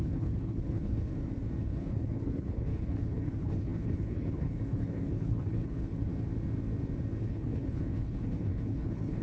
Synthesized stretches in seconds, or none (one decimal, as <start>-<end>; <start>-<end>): 0.0-1.1; 1.6-6.1; 7.2-9.2